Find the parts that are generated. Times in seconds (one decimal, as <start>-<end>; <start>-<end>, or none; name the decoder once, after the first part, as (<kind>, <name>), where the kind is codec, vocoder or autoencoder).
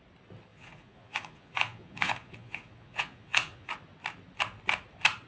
0.5-3.7 (vocoder, Vocos)